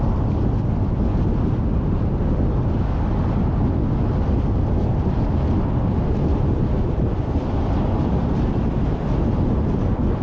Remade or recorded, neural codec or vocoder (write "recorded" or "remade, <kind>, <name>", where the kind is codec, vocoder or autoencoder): recorded